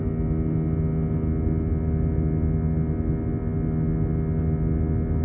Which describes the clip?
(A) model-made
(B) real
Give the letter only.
B